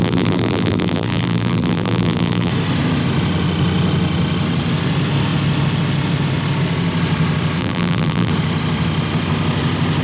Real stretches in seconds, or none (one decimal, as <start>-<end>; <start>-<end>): 2.5-7.6; 8.3-10.0